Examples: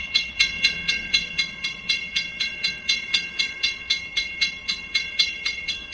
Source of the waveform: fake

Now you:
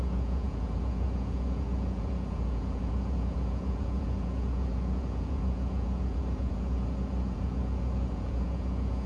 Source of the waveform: fake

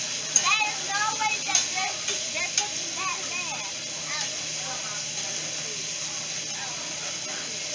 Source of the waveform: real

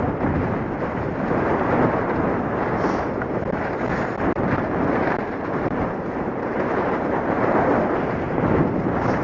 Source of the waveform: fake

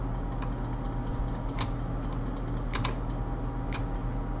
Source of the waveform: real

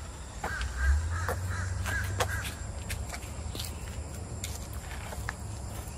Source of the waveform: real